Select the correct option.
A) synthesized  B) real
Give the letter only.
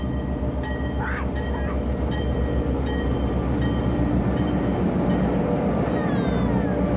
B